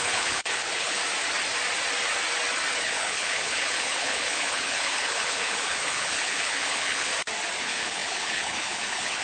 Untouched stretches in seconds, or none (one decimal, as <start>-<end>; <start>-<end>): 1.0-2.8; 7.1-7.6